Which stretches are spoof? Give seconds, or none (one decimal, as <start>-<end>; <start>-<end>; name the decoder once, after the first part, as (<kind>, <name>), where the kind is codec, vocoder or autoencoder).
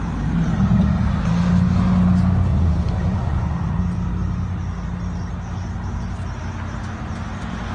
2.5-3.8 (vocoder, Vocos)